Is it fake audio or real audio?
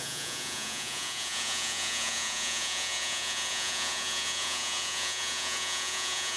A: fake